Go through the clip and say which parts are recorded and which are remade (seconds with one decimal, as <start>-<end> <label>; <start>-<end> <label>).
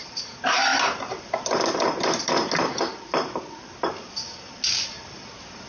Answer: 0.0-5.7 recorded